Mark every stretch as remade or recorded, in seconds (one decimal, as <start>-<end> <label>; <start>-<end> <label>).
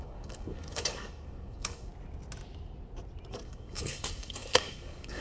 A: 0.0-1.9 remade; 1.9-3.3 recorded; 3.3-5.2 remade